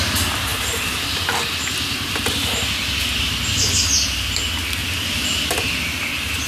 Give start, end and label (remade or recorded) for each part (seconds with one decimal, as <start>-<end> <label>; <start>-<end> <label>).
0.0-4.8 recorded; 4.8-5.5 remade; 5.5-6.5 recorded